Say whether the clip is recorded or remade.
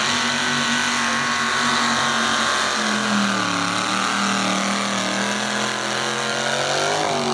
recorded